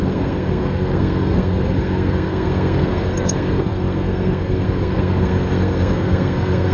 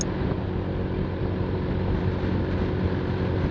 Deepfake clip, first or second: first